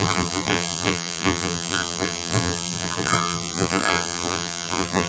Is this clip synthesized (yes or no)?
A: yes